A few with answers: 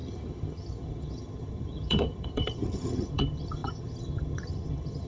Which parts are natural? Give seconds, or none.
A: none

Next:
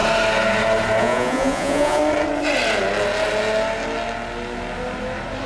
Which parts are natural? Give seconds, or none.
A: 0.0-1.0; 2.0-5.5

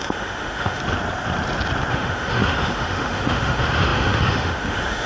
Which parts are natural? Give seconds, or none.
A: 0.8-1.9

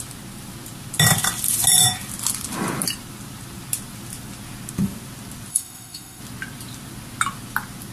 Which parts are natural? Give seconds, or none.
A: 0.0-5.5; 6.2-7.9